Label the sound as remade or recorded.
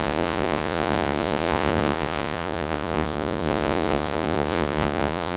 remade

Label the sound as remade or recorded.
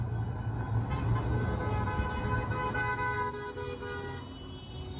recorded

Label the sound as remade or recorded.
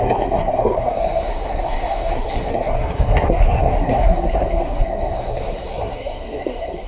remade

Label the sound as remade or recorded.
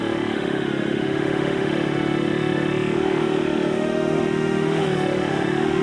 remade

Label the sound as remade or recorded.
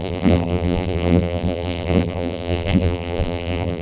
remade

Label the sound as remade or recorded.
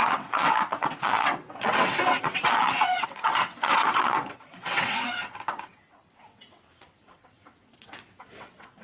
remade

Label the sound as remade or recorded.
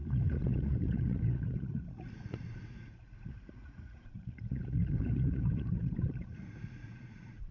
remade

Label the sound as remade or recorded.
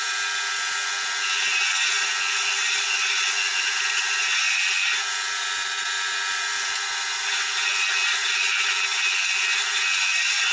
recorded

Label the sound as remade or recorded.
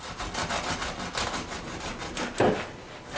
recorded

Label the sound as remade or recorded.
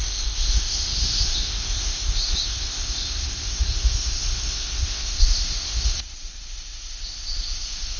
remade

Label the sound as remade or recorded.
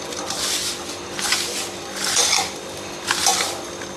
recorded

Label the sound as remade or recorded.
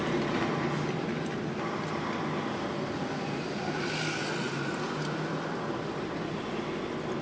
recorded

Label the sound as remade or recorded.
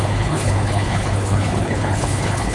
remade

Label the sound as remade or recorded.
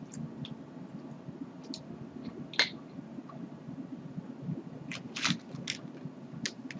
recorded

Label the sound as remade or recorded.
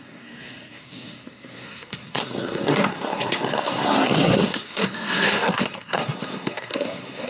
remade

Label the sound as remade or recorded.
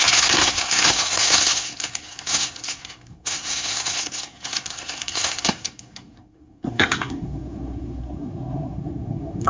remade